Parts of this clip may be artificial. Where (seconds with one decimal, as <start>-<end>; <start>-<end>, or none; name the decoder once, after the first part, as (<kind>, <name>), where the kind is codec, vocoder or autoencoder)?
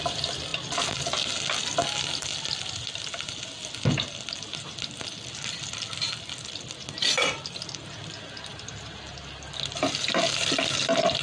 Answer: none